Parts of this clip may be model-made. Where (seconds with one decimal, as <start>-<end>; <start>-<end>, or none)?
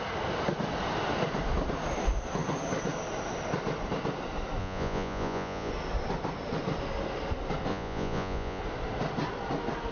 4.6-5.7; 7.7-8.6